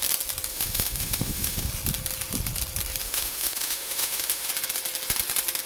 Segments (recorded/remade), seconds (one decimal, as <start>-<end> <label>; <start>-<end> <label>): 0.0-0.5 recorded; 0.5-1.7 remade; 1.7-3.0 recorded; 3.0-4.5 remade; 4.5-5.7 recorded